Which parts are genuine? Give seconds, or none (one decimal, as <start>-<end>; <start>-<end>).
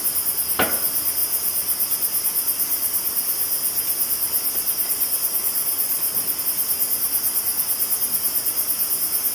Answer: 0.0-9.3